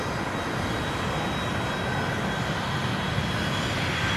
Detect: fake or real real